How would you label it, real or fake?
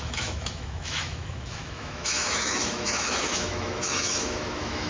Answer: fake